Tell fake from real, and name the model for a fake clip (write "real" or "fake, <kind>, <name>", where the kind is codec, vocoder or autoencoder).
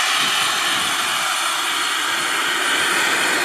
real